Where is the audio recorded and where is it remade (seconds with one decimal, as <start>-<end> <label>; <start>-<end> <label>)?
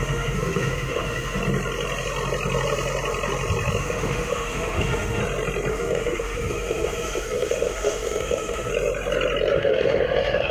0.0-1.4 remade; 1.4-3.8 recorded; 3.8-5.2 remade; 5.2-5.7 recorded; 5.7-8.7 remade; 8.7-9.5 recorded; 9.5-10.5 remade